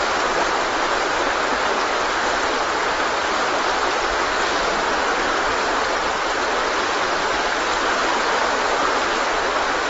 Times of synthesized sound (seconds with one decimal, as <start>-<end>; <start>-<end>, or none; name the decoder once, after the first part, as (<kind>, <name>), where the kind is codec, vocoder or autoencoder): none